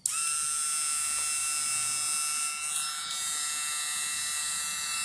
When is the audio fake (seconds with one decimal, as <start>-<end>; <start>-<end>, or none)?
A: none